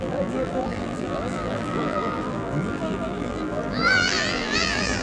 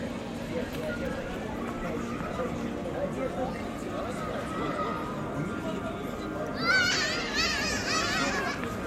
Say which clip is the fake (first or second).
first